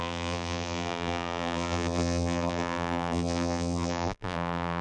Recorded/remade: remade